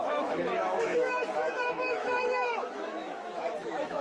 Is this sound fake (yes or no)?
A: yes